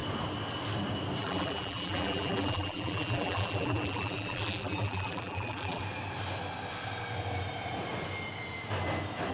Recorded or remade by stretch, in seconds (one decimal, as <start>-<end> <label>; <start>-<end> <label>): 0.0-1.2 recorded; 1.2-5.8 remade; 5.8-9.3 recorded